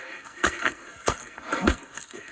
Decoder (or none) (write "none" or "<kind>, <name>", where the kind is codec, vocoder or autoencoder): codec, SNAC